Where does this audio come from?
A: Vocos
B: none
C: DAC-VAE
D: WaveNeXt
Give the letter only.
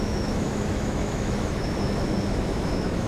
C